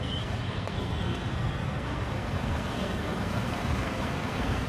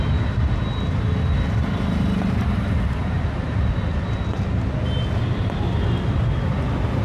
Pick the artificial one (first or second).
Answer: first